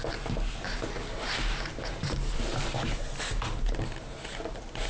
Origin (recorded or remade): recorded